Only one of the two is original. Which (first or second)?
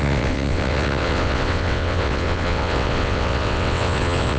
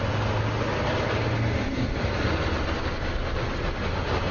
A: second